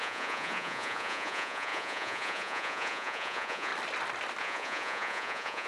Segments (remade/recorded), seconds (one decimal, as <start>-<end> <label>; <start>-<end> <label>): 0.0-3.7 remade; 3.7-4.4 recorded; 4.4-5.7 remade